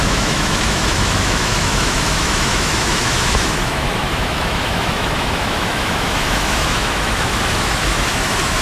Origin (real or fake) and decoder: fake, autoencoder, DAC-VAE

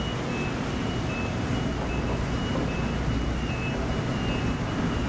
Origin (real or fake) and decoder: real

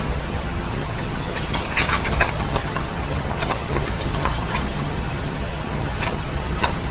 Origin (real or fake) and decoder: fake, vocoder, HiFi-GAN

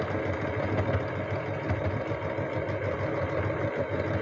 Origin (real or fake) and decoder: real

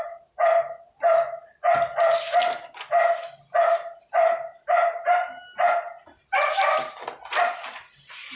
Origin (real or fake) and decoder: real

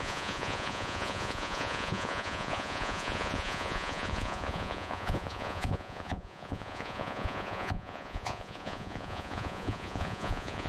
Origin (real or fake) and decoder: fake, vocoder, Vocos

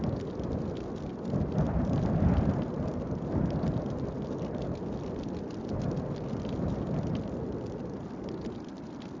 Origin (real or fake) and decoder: real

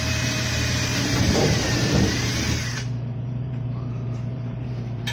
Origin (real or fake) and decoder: fake, vocoder, BigVGAN v2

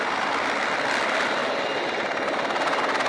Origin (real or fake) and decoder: real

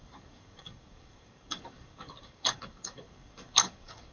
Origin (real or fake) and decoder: fake, codec, DAC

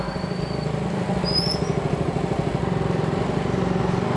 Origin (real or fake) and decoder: real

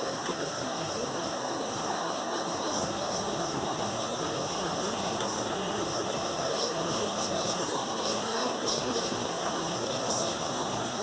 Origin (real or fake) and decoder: fake, codec, SNAC